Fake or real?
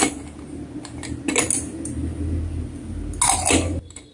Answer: real